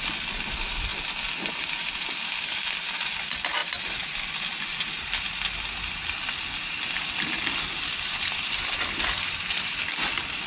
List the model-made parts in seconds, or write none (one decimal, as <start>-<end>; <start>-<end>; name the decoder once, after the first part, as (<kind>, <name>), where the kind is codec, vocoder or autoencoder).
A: none